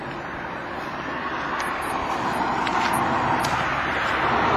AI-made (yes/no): no